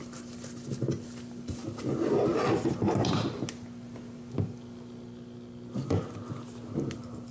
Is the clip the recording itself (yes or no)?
yes